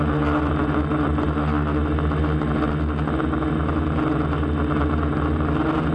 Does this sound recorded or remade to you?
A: recorded